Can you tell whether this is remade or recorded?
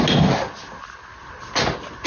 recorded